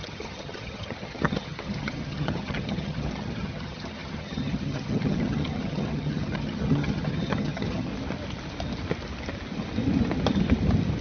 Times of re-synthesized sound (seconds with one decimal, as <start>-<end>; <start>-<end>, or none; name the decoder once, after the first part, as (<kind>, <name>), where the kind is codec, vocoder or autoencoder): 0.0-7.9 (vocoder, HiFi-GAN)